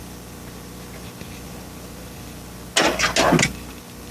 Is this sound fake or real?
real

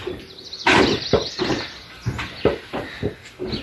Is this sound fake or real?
real